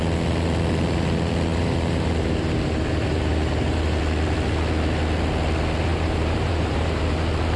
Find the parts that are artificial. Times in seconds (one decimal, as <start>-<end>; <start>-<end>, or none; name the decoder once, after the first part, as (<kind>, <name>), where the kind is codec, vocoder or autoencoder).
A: 1.5-4.0 (vocoder, BigVGAN v2); 5.9-7.0